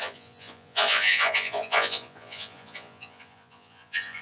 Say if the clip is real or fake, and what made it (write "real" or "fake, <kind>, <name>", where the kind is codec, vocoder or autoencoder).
fake, vocoder, Vocos